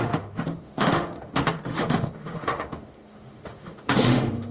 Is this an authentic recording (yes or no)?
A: no